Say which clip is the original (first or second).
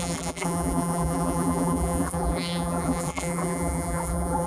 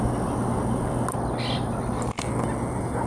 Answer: second